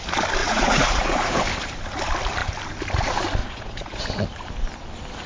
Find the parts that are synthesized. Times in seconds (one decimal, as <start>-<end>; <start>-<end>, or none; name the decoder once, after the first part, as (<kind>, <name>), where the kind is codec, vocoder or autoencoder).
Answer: 0.4-1.4 (vocoder, Vocos); 3.4-4.0

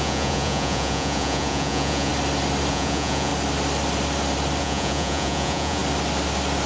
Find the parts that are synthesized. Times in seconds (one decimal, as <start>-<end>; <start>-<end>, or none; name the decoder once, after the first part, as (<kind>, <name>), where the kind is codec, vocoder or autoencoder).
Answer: 0.0-2.1 (vocoder, Vocos); 2.7-3.3; 4.6-5.8

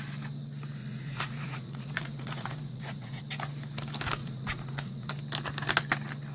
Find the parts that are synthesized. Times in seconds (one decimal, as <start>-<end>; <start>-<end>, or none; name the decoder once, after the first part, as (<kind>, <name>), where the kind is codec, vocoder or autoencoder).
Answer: 0.8-3.2 (vocoder, Vocos); 4.2-5.1